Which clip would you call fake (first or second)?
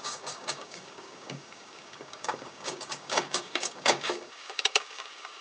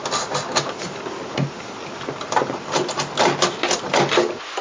first